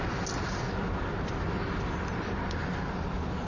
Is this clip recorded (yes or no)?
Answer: no